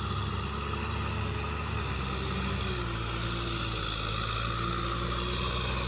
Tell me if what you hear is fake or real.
real